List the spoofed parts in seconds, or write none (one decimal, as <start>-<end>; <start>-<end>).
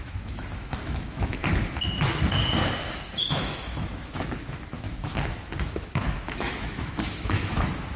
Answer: 0.0-1.4; 3.2-8.0